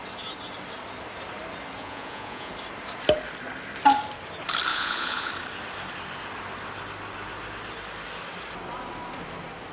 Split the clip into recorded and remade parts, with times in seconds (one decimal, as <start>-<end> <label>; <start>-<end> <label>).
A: 0.0-1.8 recorded; 1.8-2.5 remade; 2.5-4.7 recorded; 4.7-5.3 remade; 5.3-9.7 recorded